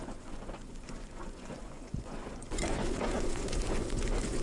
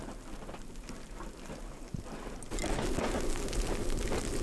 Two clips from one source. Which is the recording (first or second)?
second